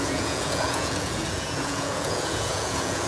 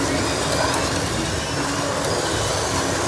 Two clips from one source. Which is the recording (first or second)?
second